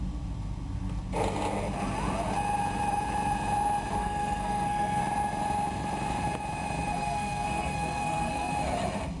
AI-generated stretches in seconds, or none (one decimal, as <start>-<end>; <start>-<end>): 4.0-5.0; 6.9-8.5